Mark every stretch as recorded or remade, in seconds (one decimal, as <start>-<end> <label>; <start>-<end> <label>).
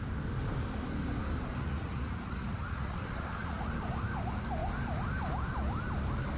0.0-1.6 recorded; 1.6-3.7 remade; 3.7-6.4 recorded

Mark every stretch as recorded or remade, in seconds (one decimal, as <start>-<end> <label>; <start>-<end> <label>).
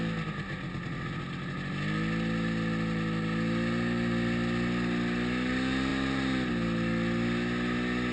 0.0-8.1 recorded